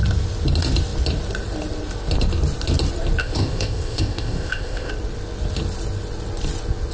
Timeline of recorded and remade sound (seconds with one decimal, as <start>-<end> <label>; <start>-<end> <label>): 0.0-3.2 recorded; 3.2-4.9 remade; 4.9-6.9 recorded

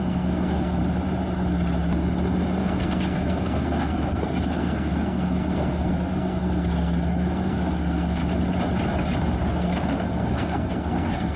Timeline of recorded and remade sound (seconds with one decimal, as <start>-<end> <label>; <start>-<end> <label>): 0.0-0.8 remade; 0.8-2.6 recorded; 2.6-8.2 remade; 8.2-9.5 recorded; 9.5-11.4 remade

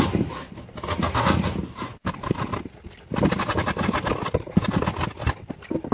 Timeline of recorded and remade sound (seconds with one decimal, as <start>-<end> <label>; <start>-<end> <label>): 0.0-5.9 recorded

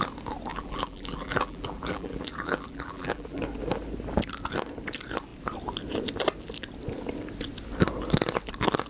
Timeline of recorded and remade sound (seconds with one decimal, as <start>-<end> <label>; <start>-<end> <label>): 0.0-0.5 recorded; 0.5-3.4 remade; 3.4-8.9 recorded

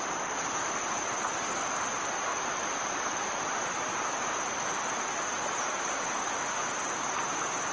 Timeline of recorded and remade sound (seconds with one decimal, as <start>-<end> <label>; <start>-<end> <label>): 0.0-7.7 recorded

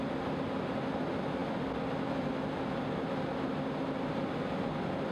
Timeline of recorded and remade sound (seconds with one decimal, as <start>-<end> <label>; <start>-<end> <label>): 0.0-5.1 recorded

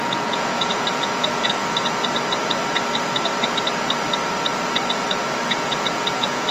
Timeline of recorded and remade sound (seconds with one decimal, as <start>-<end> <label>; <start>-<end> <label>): 0.0-1.6 remade; 1.6-5.5 recorded; 5.5-6.5 remade